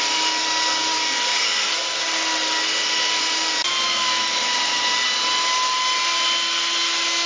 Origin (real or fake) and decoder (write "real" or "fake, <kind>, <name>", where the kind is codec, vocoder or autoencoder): real